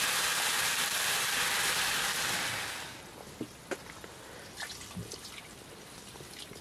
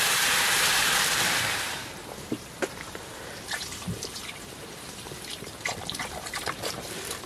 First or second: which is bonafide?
first